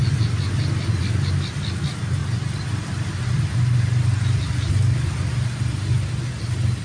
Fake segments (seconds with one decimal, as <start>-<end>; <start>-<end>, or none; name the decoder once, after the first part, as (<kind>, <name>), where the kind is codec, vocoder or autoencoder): none